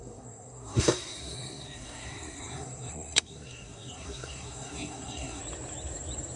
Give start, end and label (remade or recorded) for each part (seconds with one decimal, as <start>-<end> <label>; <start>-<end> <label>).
0.0-5.4 remade; 5.4-6.4 recorded